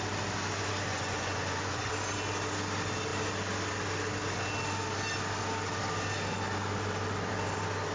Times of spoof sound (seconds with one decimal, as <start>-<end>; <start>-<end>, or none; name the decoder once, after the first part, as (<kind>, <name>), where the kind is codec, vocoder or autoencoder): 0.9-1.9 (vocoder, Vocos)